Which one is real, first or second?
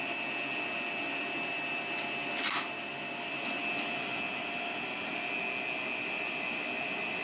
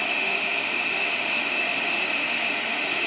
first